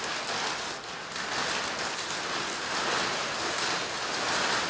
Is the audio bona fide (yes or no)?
yes